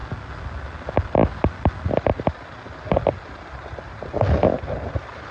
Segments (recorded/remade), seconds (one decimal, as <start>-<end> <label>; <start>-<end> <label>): 0.0-5.3 recorded